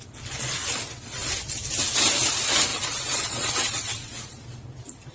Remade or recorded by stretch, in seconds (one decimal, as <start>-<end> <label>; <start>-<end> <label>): 0.0-2.7 recorded; 2.7-4.2 remade; 4.2-5.1 recorded